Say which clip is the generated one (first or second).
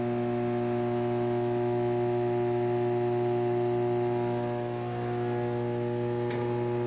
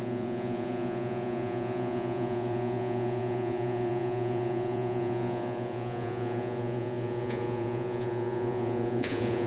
second